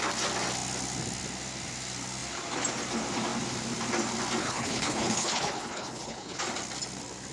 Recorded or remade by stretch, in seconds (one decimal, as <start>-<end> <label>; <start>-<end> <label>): 0.0-4.4 recorded; 4.4-6.4 remade; 6.4-7.3 recorded